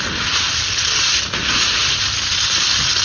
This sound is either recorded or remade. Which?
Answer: recorded